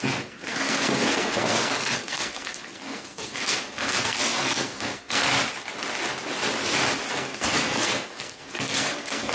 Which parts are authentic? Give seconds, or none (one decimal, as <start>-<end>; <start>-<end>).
5.3-7.1